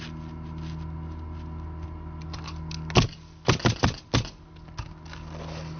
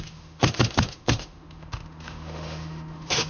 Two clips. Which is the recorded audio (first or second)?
first